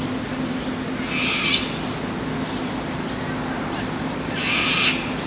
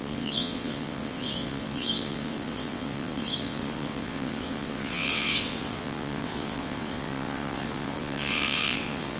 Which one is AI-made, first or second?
second